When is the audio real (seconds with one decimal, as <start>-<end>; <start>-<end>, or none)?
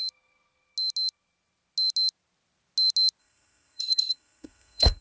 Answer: 0.0-3.2